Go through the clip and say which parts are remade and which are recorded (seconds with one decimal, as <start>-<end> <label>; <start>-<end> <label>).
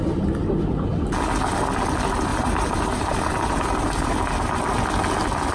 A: 0.0-2.3 recorded; 2.3-4.4 remade; 4.4-5.5 recorded